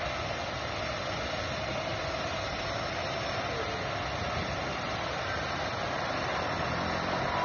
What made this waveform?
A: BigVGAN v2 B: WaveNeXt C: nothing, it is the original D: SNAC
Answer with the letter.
C